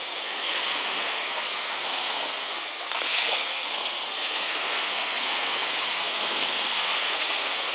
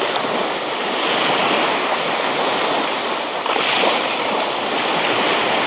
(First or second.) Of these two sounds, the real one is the second